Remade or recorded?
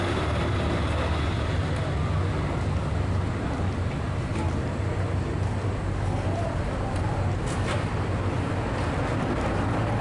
recorded